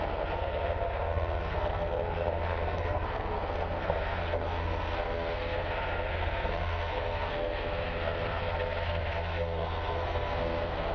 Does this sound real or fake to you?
fake